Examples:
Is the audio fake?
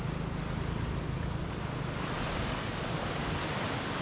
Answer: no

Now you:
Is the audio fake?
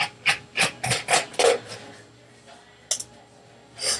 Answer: no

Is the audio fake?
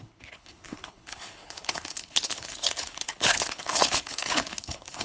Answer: yes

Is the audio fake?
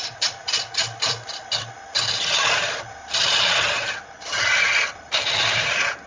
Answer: no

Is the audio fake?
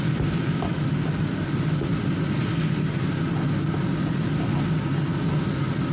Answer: no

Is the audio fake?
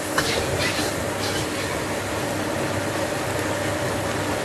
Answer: no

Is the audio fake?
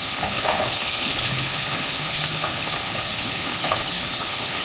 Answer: yes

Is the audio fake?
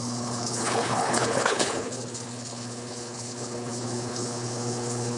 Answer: yes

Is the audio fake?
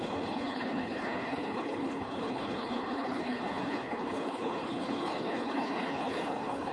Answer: yes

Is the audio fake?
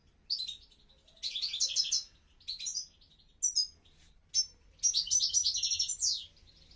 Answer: no